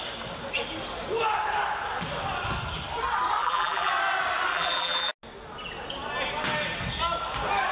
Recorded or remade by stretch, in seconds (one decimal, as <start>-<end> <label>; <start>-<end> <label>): 0.0-3.4 recorded; 3.4-3.9 remade; 3.9-4.5 recorded; 4.5-5.1 remade; 5.1-7.7 recorded